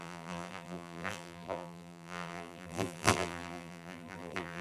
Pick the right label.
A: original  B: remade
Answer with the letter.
B